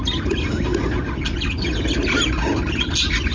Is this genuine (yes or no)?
yes